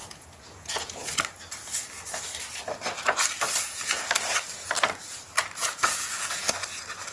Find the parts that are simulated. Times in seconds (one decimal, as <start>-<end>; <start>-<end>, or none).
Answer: 0.0-1.1; 5.6-6.5